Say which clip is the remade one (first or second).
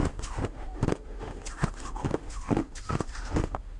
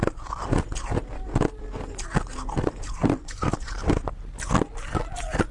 first